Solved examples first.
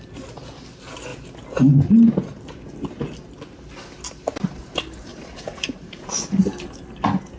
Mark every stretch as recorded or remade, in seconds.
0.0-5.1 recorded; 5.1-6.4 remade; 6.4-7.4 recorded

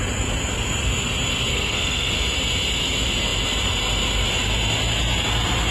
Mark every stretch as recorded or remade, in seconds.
0.0-1.5 recorded; 1.5-2.1 remade; 2.1-5.7 recorded

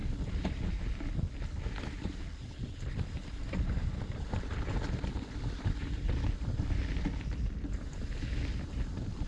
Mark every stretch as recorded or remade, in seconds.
0.0-9.3 recorded

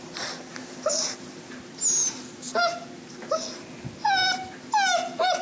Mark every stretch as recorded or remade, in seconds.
0.0-5.4 recorded

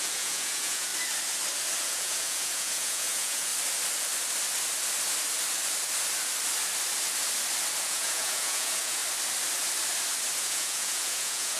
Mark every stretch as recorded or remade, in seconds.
0.0-0.9 remade; 0.9-1.8 recorded; 1.8-3.5 remade; 3.5-7.8 recorded; 7.8-9.0 remade; 9.0-10.4 recorded; 10.4-11.6 remade

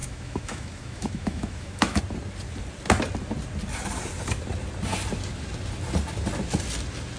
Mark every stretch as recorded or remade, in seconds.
0.0-2.0 remade; 2.0-7.2 recorded

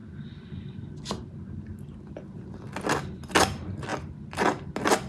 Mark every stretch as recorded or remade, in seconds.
0.0-5.1 recorded

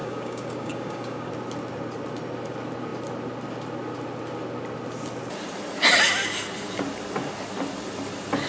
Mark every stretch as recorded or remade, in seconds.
0.0-1.3 remade; 1.3-8.5 recorded